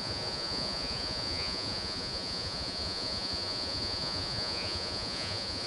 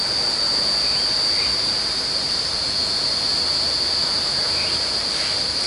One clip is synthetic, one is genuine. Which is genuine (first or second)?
second